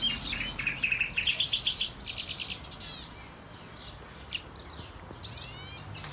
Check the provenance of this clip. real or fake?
real